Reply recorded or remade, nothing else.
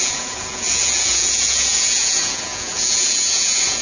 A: remade